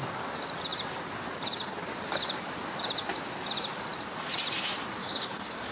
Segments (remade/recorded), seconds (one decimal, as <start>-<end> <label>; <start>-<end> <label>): 0.0-5.0 recorded; 5.0-5.7 remade